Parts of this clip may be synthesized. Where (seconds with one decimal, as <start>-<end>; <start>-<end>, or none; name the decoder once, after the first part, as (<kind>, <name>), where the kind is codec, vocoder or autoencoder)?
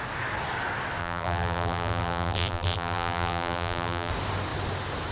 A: 1.0-4.1 (vocoder, BigVGAN v2)